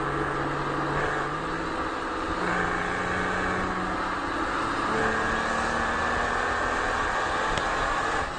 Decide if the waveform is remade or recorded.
recorded